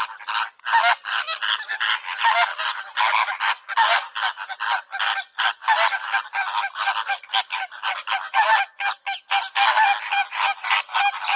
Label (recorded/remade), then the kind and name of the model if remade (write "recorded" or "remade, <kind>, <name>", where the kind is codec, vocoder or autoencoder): recorded